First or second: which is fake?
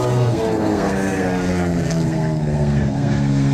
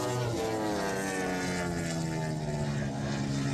first